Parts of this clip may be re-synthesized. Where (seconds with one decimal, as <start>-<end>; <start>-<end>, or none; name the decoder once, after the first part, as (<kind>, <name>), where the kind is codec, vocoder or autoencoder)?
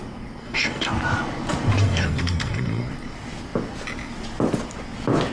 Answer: 0.4-0.9 (codec, SNAC); 1.8-2.9